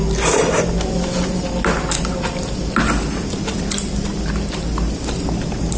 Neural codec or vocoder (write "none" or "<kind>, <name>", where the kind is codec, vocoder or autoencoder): none